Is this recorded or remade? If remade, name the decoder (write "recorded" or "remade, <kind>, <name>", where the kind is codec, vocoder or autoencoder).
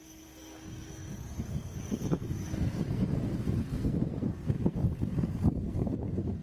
remade, codec, SNAC